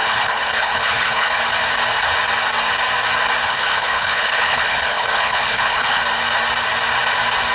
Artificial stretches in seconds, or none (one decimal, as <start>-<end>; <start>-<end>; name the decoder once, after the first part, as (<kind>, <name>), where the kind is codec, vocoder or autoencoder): 0.0-1.4 (codec, HILCodec); 3.4-6.0